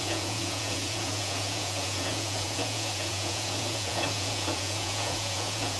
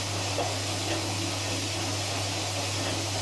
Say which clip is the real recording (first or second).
second